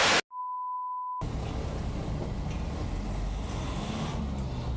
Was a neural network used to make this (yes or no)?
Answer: no